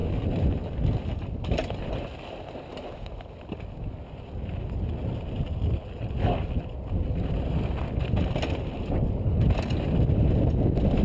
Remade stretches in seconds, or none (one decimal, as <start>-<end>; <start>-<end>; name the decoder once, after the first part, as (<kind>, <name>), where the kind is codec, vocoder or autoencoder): none